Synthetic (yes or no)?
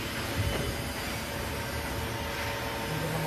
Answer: no